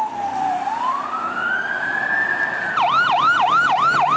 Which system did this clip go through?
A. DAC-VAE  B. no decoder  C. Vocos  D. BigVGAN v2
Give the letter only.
D